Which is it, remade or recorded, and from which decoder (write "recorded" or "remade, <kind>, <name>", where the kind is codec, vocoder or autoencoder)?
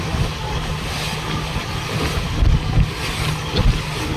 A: recorded